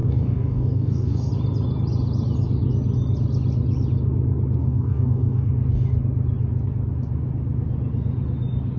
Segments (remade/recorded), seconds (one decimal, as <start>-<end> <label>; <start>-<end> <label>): 0.0-1.3 remade; 1.3-4.6 recorded; 4.6-5.5 remade; 5.5-8.8 recorded